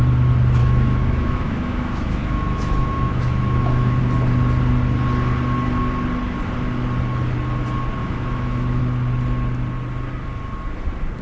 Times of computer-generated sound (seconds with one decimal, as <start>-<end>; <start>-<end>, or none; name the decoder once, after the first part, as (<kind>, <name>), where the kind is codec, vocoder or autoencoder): 0.6-4.0 (autoencoder, DAC-VAE); 8.0-8.8